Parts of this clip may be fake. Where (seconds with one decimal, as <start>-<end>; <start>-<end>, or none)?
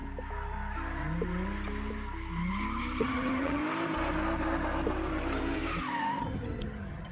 3.0-3.6; 6.2-7.1